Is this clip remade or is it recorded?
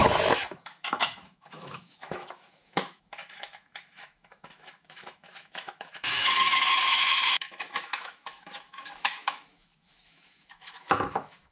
remade